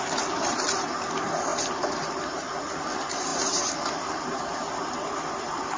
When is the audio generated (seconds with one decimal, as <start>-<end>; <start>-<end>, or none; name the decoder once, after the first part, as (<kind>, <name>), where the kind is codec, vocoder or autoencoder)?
0.0-1.5 (vocoder, BigVGAN v2); 2.1-5.8